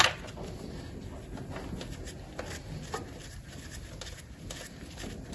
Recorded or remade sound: recorded